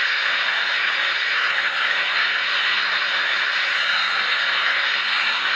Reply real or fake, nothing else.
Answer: fake